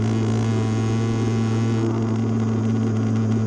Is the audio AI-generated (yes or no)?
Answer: no